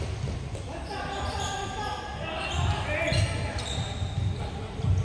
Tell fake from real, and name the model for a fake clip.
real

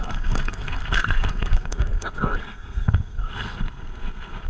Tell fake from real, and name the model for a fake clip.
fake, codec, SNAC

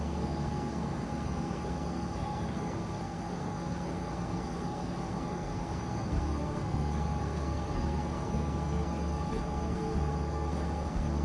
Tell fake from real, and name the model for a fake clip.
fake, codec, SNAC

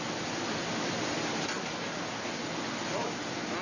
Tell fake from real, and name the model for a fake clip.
real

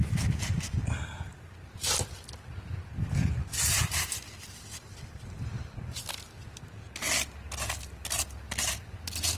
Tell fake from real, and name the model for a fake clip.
real